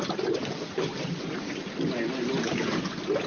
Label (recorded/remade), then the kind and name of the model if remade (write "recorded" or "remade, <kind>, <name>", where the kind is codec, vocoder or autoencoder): recorded